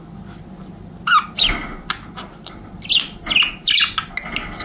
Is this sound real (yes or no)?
yes